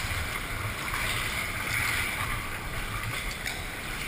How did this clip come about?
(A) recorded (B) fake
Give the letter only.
A